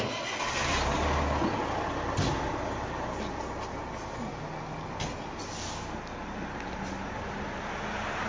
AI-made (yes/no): no